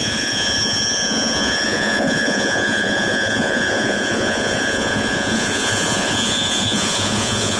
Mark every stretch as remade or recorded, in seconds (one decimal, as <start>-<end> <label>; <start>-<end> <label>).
0.0-7.6 remade